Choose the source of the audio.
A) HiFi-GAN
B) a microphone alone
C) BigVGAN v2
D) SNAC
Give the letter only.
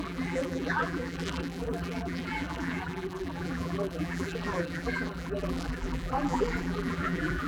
C